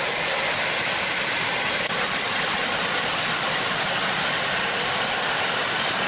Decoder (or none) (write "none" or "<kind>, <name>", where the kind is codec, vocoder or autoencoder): none